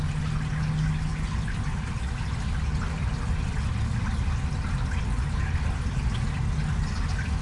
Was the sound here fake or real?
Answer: real